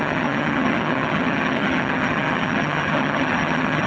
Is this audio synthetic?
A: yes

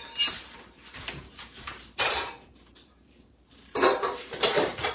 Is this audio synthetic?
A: yes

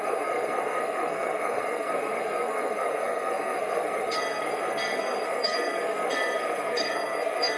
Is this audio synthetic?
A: yes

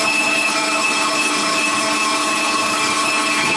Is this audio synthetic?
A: yes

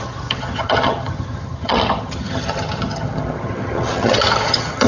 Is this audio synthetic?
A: yes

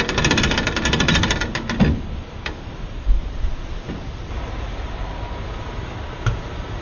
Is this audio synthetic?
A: no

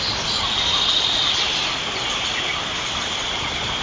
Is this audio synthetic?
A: no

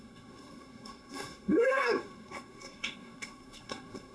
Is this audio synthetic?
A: yes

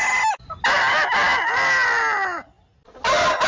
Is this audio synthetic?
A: no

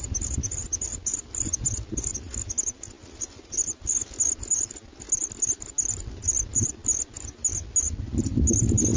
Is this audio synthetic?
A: no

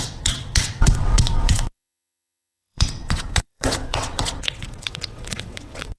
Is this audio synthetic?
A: yes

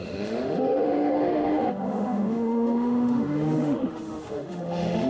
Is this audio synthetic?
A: yes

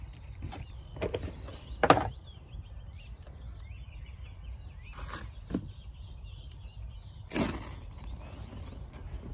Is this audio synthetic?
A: no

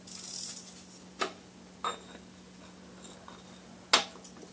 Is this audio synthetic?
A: no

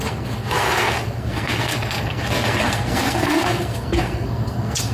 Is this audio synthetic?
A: yes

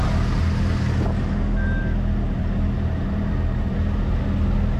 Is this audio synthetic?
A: no